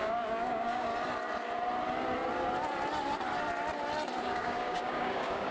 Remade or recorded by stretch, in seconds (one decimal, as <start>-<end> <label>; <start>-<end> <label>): 0.0-0.9 remade; 0.9-4.2 recorded; 4.2-5.5 remade